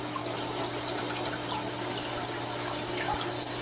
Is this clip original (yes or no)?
yes